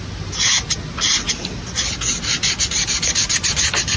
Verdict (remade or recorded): recorded